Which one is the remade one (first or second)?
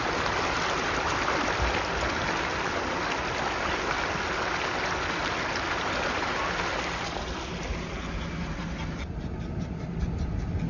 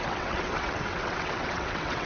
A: second